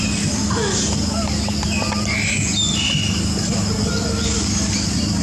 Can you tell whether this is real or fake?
real